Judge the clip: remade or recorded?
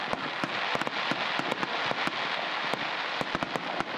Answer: recorded